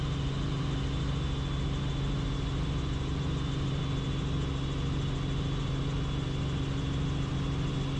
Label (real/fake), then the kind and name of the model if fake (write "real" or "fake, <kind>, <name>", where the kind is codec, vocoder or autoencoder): real